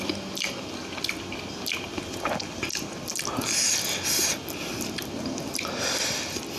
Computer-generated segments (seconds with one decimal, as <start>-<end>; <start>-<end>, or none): none